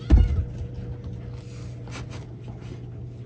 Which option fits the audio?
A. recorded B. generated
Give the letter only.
A